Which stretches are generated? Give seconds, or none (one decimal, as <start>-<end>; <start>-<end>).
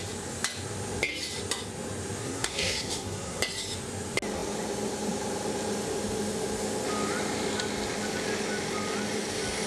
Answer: 2.2-3.4